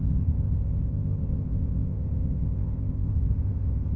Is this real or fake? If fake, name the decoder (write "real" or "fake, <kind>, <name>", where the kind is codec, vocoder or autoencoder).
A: fake, codec, ZipCodec